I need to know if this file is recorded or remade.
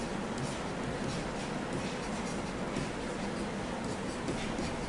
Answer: recorded